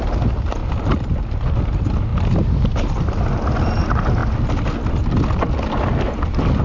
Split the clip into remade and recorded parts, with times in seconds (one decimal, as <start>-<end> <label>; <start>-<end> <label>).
0.0-6.6 recorded